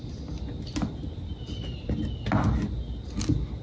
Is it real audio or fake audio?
real